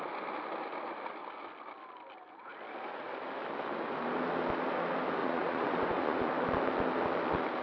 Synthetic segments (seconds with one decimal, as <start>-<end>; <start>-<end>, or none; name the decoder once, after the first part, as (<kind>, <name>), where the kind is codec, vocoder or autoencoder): 5.2-6.3 (vocoder, Vocos)